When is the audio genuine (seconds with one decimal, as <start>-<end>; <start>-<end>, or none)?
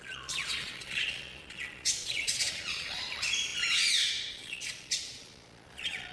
3.5-4.3